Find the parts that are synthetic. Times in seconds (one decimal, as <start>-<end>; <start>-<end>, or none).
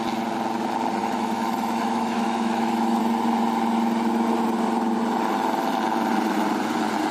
1.0-3.0